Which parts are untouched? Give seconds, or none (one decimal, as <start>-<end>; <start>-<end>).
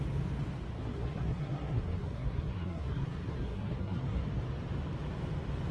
0.0-0.8; 4.2-5.7